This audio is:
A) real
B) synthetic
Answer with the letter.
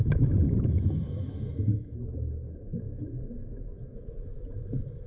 B